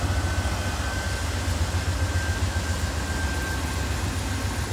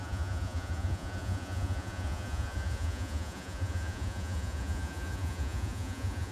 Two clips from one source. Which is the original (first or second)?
first